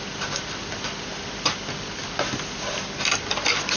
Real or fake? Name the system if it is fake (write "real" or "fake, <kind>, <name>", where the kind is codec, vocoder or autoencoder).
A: real